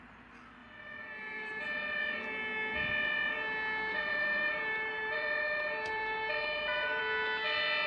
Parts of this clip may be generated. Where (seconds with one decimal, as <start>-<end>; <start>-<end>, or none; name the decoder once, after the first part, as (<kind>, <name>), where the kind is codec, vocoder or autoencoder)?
0.6-2.0 (vocoder, BigVGAN v2); 3.9-7.0